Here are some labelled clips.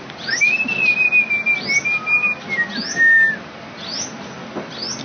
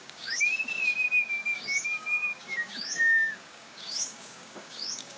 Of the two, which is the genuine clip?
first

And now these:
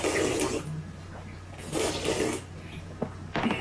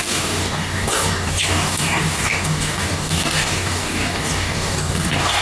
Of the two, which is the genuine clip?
first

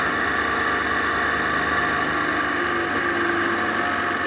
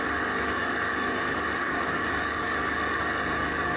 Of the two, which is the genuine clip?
first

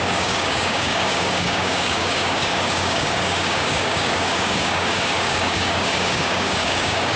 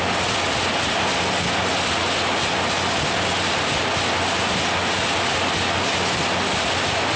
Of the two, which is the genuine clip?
second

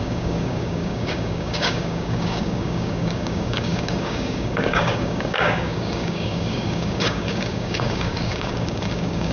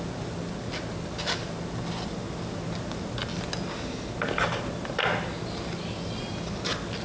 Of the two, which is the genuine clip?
second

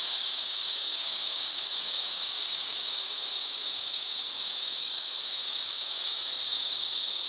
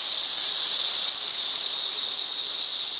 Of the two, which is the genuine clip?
second